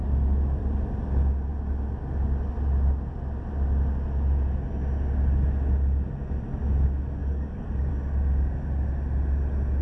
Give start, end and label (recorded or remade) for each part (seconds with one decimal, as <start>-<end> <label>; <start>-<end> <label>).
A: 0.0-7.2 recorded; 7.2-7.9 remade; 7.9-9.8 recorded